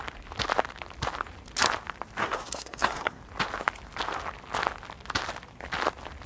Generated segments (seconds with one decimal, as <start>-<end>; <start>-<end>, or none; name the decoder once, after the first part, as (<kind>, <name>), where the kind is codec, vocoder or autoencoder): 2.2-3.2 (codec, SNAC)